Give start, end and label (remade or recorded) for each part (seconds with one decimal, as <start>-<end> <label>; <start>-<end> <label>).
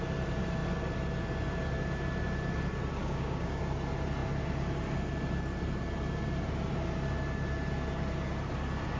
0.0-3.0 recorded; 3.0-3.6 remade; 3.6-9.0 recorded